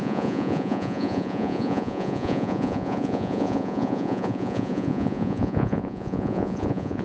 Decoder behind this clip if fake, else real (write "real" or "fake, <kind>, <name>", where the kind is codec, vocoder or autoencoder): fake, vocoder, Vocos